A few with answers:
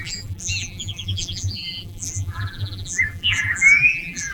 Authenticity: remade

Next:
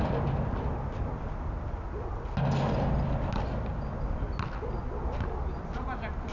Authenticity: recorded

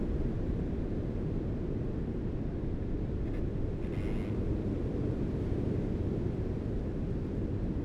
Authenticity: recorded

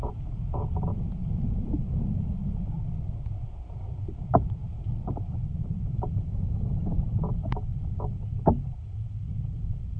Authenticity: recorded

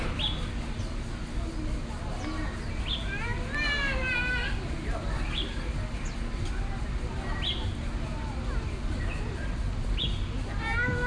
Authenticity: recorded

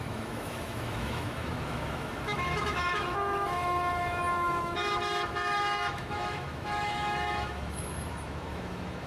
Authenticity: remade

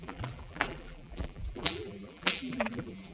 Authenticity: remade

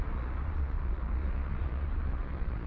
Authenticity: remade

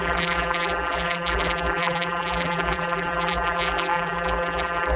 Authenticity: remade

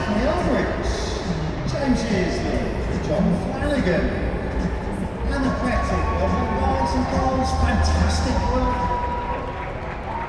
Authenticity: recorded